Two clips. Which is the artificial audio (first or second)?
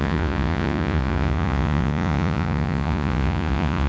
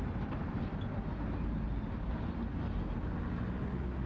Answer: first